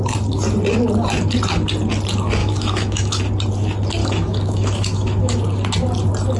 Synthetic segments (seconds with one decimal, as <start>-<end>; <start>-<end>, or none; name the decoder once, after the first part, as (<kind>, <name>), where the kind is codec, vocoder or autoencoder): 2.4-3.2 (autoencoder, DAC-VAE); 4.0-5.4